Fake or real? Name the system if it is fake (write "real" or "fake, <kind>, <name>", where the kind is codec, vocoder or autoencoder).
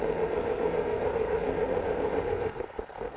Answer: fake, codec, SNAC